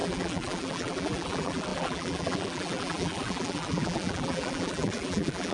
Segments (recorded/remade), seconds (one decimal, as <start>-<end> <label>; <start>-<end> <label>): 0.0-5.5 remade